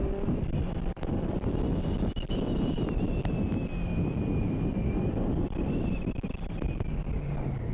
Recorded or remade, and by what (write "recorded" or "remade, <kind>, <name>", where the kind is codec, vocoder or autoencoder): recorded